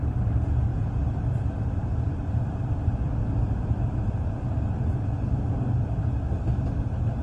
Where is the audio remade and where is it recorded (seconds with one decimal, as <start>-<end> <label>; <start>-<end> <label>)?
0.0-0.7 remade; 0.7-1.3 recorded; 1.3-7.2 remade